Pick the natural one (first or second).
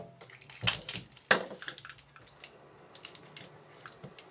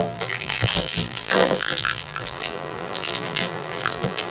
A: first